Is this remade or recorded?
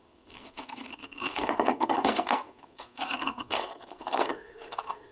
remade